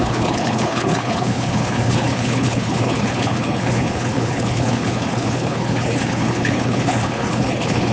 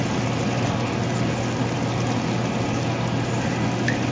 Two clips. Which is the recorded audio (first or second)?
second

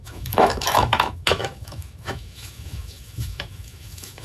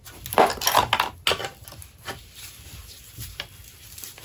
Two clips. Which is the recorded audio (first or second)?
second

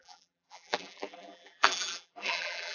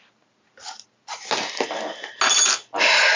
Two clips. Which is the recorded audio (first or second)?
second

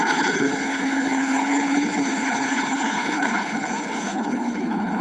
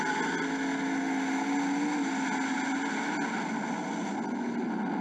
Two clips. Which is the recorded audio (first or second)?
second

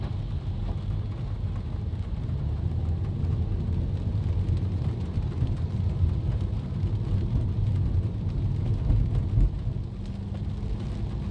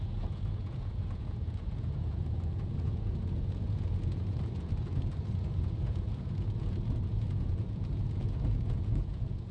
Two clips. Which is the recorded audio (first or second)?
first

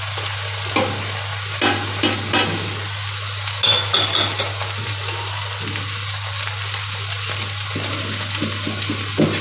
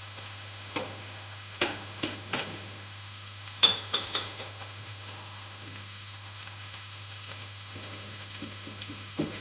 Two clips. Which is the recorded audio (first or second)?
first